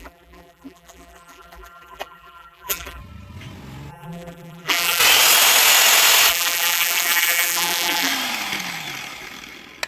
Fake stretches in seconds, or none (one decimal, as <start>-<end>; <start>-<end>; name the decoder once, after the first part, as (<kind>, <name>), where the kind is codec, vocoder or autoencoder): 0.0-3.0 (vocoder, BigVGAN v2); 3.9-5.0; 6.3-8.1